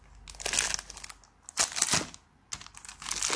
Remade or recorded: recorded